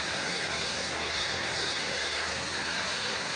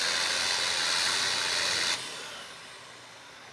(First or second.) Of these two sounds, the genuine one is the second